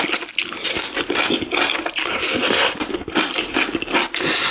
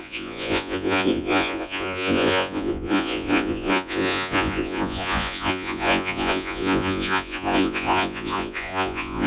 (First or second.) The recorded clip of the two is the first